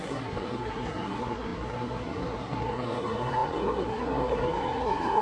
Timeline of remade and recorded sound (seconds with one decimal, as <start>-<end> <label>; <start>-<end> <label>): 0.0-5.2 remade